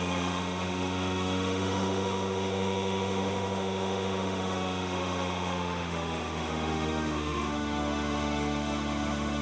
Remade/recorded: remade